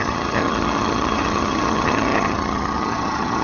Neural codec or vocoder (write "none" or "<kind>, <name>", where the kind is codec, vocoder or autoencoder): vocoder, HiFi-GAN